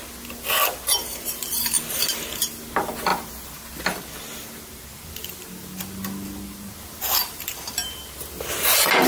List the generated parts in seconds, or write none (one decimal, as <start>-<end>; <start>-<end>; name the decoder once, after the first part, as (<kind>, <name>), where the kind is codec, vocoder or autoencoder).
1.0-2.4 (vocoder, BigVGAN v2); 7.2-8.0